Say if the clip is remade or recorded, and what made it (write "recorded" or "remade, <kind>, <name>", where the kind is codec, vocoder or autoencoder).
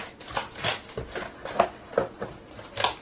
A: recorded